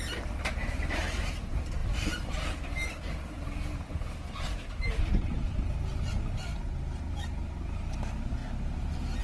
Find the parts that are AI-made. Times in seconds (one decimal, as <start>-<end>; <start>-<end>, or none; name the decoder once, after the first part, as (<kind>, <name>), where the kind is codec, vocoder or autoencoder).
0.0-5.1 (vocoder, BigVGAN v2); 7.1-8.4